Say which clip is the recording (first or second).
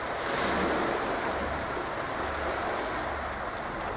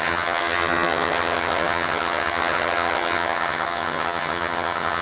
first